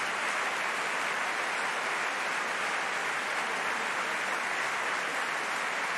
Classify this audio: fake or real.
real